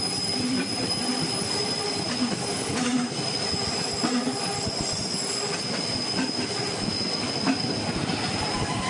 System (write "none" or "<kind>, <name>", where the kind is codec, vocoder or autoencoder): none